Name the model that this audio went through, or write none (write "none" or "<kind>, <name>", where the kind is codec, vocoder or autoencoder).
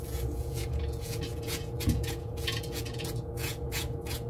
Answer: vocoder, Vocos